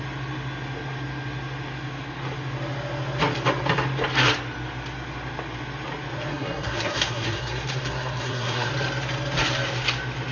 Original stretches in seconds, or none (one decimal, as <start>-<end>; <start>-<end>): 0.0-6.3; 8.7-10.3